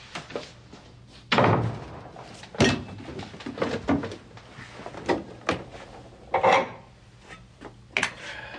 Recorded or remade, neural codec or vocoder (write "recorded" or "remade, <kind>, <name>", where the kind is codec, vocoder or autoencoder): recorded